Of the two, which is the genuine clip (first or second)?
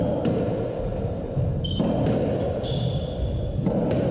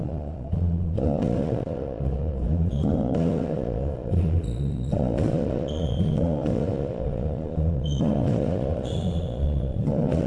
first